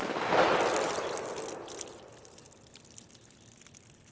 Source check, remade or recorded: recorded